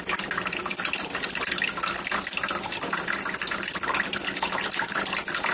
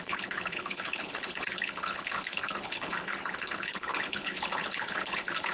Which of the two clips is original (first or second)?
first